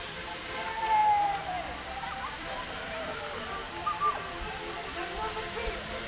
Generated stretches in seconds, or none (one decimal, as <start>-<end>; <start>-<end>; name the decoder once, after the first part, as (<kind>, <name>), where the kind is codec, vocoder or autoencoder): 0.0-3.6 (vocoder, BigVGAN v2)